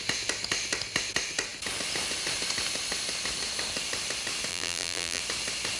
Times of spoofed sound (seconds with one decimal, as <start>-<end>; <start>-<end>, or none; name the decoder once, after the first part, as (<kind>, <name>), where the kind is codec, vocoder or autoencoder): 4.5-5.2 (vocoder, BigVGAN v2)